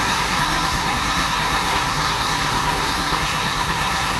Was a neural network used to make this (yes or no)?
yes